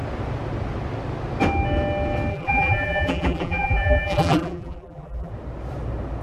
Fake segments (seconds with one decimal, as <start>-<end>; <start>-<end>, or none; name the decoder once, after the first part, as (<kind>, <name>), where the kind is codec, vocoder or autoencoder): 2.3-5.3 (vocoder, BigVGAN v2)